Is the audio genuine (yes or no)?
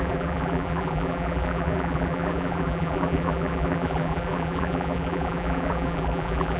no